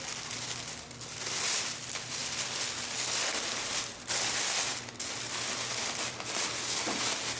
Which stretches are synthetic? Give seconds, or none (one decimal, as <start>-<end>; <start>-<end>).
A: none